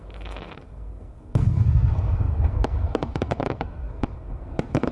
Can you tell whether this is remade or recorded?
remade